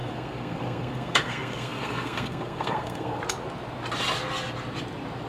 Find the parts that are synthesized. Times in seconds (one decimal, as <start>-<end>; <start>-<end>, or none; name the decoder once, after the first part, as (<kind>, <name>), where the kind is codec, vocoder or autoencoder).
0.0-3.2 (codec, SNAC)